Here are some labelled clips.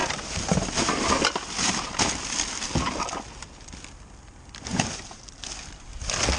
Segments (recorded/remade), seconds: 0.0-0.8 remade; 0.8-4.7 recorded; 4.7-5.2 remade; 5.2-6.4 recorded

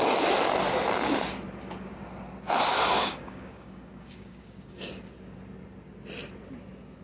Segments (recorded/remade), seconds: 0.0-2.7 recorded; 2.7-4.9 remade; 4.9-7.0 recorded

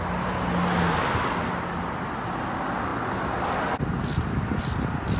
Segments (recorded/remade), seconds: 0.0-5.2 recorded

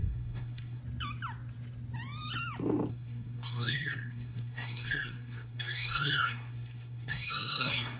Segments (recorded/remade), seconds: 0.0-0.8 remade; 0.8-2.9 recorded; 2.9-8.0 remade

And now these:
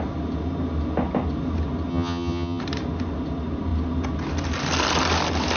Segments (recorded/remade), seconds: 0.0-1.9 recorded; 1.9-2.6 remade; 2.6-5.6 recorded

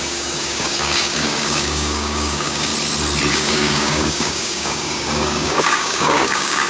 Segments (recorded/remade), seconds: 0.0-2.7 remade; 2.7-3.3 recorded; 3.3-6.7 remade